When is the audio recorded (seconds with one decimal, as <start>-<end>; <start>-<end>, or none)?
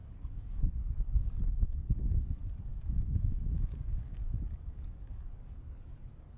none